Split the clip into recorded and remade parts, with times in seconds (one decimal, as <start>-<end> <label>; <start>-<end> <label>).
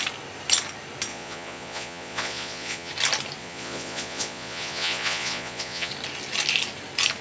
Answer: 0.0-1.1 recorded; 1.1-2.9 remade; 2.9-3.4 recorded; 3.4-5.9 remade; 5.9-7.2 recorded